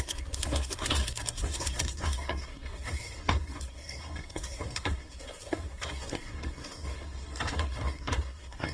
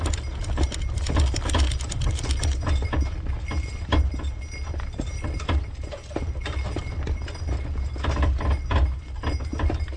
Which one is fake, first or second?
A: first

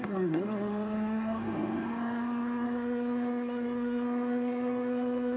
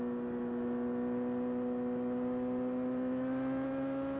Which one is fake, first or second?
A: first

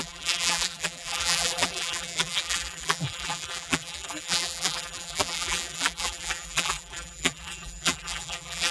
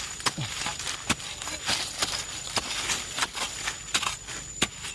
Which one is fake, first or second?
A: first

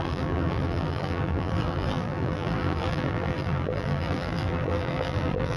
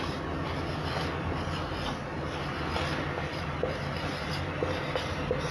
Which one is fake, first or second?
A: first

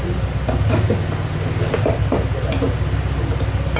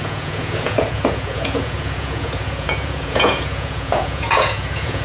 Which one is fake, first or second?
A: second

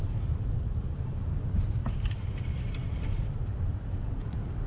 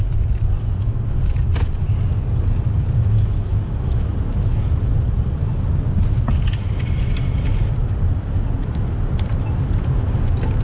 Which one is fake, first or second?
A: first